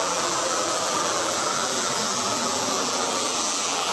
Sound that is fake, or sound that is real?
fake